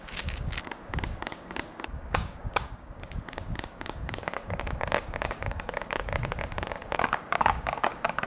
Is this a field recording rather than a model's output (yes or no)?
no